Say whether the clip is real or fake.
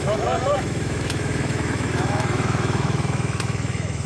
fake